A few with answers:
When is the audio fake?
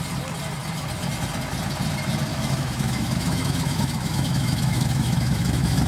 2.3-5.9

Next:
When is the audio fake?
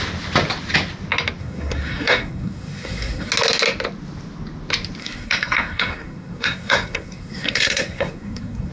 1.4-3.3; 5.0-8.7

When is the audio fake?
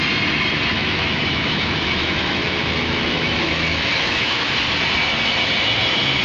0.8-4.5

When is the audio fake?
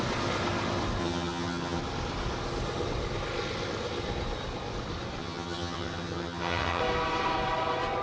1.0-1.8; 5.2-6.8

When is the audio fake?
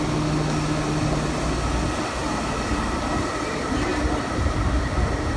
2.2-5.4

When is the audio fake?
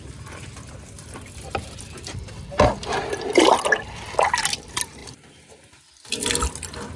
1.0-3.8; 5.0-6.4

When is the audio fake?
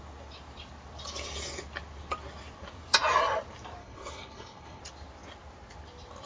3.8-4.8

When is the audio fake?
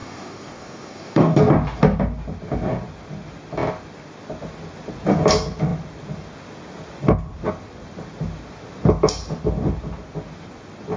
0.0-1.4